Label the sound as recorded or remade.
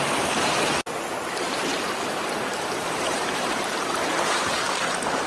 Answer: remade